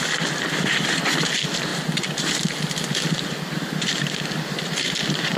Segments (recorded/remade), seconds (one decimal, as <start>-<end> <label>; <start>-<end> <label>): 0.0-5.4 recorded